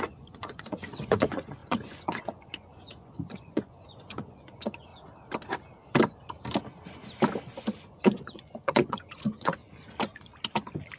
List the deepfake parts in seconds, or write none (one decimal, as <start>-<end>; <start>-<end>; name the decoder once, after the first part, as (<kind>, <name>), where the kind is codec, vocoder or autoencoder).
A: 0.0-4.9 (vocoder, Vocos); 7.8-9.6